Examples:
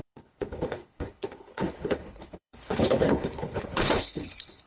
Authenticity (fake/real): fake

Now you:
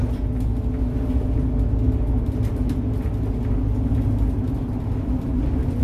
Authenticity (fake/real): real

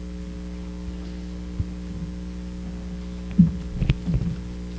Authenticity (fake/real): real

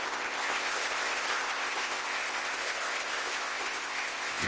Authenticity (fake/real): fake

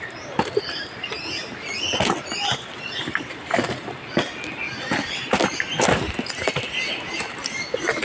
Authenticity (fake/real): real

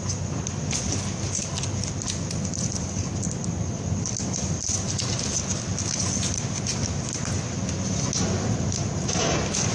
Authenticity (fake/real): real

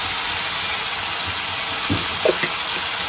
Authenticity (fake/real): real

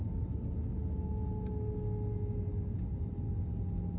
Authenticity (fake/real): real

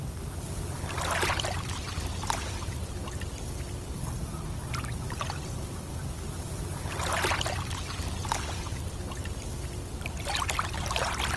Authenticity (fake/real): real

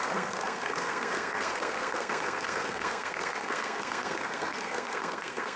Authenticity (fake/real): fake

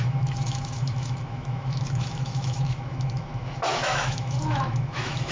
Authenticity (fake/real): fake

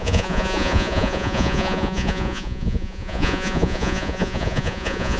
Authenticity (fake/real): fake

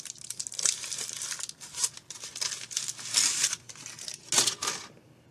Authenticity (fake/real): real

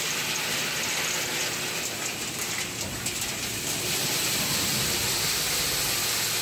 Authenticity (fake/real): real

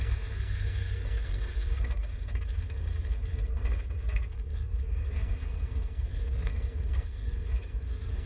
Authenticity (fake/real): fake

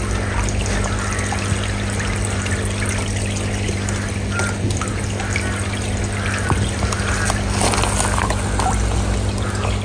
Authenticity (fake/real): real